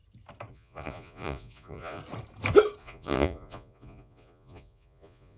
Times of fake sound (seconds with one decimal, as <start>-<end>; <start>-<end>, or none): 0.5-2.0; 2.8-5.4